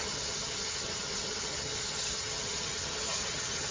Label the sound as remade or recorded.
remade